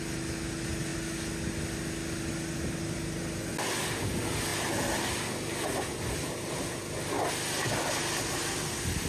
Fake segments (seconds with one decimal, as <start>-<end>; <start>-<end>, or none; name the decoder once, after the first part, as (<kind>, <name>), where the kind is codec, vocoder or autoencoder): none